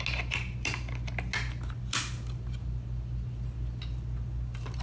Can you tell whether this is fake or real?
real